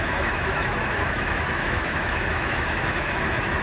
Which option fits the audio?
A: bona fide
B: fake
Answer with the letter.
B